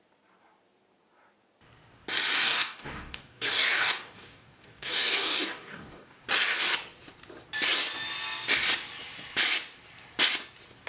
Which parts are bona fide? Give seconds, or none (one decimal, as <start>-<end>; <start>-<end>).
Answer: 0.0-2.3; 6.2-10.9

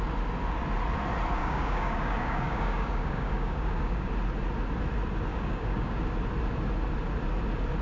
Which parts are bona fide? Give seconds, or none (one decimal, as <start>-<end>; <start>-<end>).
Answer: 0.0-1.4; 4.1-5.3; 6.0-7.8

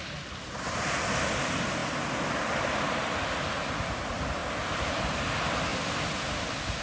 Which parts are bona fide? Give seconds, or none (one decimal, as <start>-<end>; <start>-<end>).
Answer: 0.0-6.8

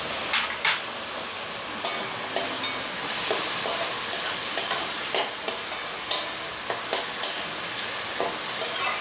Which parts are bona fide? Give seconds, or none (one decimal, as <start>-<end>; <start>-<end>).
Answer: 0.0-9.0

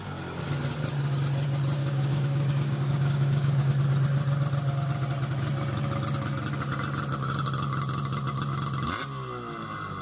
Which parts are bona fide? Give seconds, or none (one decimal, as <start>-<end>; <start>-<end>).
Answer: 0.0-1.8; 3.7-10.0

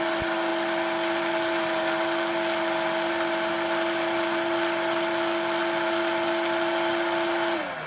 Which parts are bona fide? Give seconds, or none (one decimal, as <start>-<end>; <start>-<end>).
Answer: 0.0-7.9

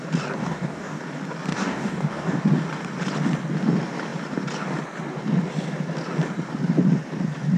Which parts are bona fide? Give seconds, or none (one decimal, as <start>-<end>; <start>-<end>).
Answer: 0.0-0.4; 1.0-1.5; 2.4-7.6